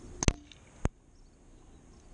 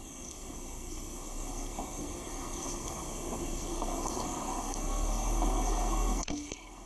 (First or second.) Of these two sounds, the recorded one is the first